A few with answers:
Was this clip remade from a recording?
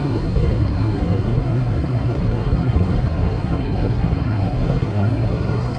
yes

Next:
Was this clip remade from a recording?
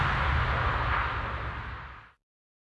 no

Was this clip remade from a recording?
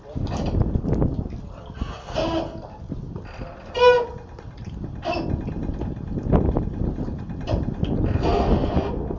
no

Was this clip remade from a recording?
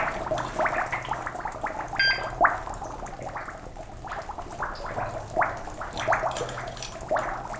no